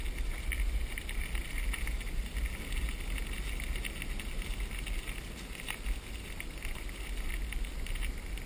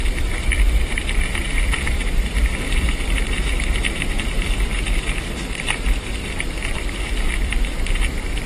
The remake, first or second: second